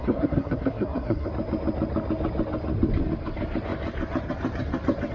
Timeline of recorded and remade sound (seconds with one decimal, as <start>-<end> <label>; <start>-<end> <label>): 0.0-1.3 remade; 1.3-5.1 recorded